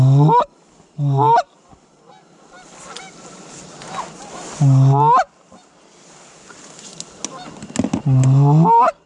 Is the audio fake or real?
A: real